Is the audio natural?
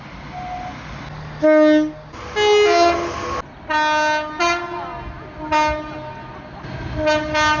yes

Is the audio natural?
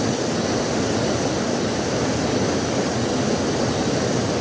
yes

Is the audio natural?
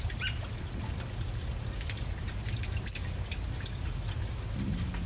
yes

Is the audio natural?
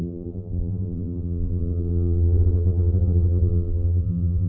no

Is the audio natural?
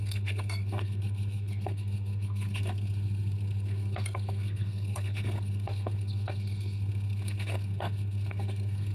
no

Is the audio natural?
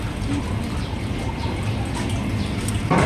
yes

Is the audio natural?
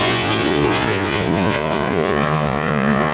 no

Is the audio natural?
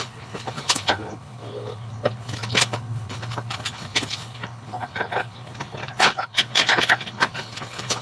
no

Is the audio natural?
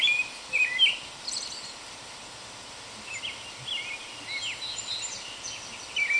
yes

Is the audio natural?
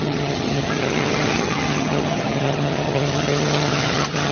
no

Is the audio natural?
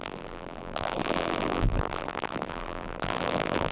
no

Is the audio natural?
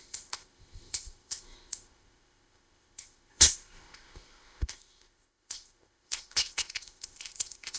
no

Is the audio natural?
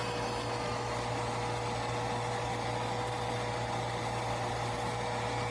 yes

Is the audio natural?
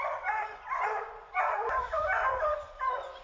no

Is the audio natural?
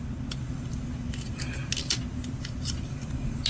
yes